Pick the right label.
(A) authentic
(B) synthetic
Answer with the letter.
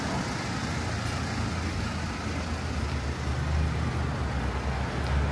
A